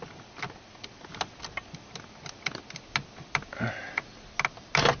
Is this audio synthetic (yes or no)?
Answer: no